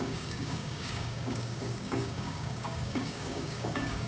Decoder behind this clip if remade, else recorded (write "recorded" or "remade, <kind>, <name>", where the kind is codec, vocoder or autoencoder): remade, codec, DAC